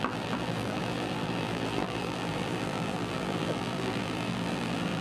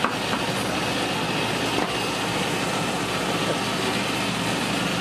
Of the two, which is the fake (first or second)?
first